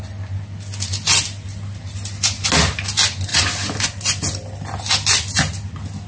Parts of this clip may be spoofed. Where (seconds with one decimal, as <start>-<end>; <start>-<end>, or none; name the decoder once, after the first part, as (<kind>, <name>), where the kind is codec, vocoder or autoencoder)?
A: none